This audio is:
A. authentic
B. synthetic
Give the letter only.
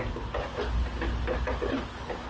A